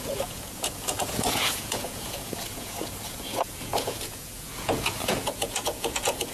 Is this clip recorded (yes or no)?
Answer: no